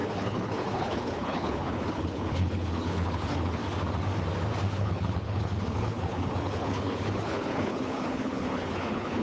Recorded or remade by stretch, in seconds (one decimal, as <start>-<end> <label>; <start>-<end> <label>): 0.0-3.6 remade; 3.6-4.7 recorded; 4.7-9.2 remade